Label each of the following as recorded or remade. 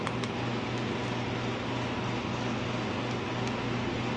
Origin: recorded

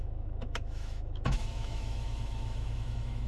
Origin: remade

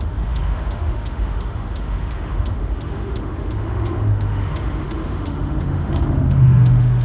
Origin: remade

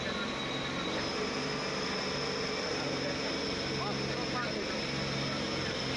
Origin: recorded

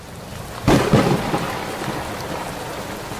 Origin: recorded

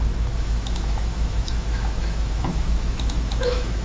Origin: remade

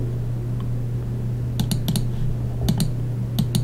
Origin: recorded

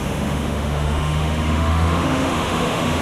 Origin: remade